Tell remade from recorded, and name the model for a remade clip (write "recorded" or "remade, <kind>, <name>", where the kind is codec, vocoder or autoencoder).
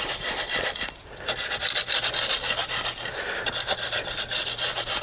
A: recorded